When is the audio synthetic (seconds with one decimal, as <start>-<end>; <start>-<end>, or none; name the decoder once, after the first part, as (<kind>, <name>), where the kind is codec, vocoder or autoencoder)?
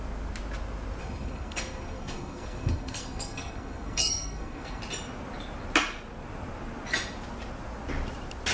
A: 1.0-4.8 (codec, SNAC)